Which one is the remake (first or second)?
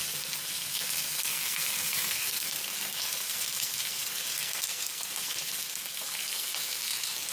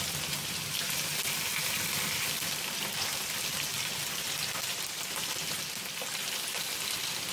first